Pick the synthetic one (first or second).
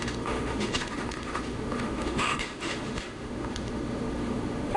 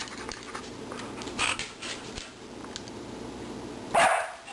first